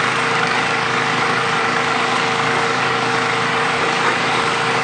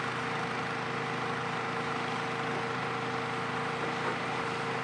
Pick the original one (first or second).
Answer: second